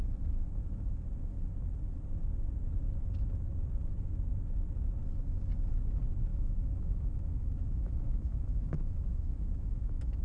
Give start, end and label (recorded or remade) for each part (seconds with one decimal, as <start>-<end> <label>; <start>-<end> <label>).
0.0-6.3 recorded; 6.3-10.2 remade